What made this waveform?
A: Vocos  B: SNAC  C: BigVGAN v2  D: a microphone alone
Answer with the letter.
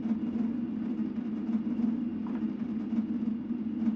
D